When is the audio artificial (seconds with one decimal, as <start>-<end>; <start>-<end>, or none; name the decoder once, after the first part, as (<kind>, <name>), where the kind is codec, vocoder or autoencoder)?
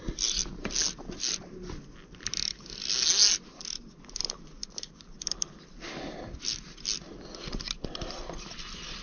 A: none